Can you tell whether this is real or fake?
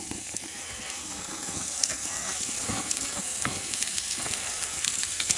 fake